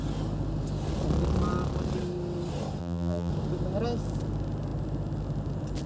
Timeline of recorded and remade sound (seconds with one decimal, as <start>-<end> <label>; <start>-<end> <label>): 0.0-2.8 recorded; 2.8-3.3 remade; 3.3-5.9 recorded